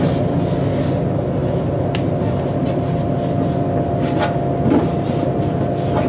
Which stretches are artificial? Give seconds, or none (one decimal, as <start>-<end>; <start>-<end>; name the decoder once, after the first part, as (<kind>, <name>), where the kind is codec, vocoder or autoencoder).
none

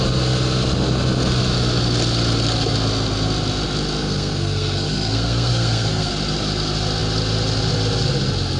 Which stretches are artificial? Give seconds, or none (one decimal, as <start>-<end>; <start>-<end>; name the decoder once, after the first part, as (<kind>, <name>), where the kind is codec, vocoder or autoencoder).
4.0-6.1 (codec, SNAC)

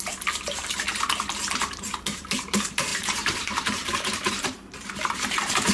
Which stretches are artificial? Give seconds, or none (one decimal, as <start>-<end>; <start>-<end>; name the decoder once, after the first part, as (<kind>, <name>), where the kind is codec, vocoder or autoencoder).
0.0-0.9 (vocoder, BigVGAN v2); 1.6-5.7

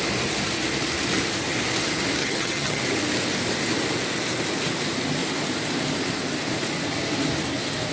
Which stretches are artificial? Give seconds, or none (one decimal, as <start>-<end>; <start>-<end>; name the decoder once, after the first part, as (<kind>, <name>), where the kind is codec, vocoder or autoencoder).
2.2-2.8 (vocoder, HiFi-GAN)

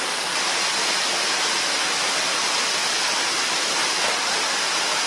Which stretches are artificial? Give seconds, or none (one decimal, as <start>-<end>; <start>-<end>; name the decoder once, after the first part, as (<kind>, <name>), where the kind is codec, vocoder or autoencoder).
none

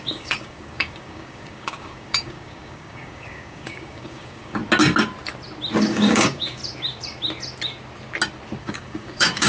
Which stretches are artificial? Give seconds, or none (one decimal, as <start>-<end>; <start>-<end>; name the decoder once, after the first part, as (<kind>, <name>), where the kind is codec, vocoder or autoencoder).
0.0-4.6 (codec, DAC); 5.8-6.6; 8.6-9.5